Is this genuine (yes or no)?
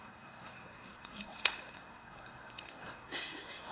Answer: no